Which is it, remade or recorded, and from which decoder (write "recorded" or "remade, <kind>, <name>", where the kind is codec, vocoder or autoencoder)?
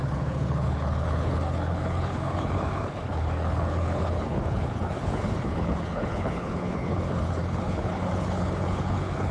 remade, codec, HILCodec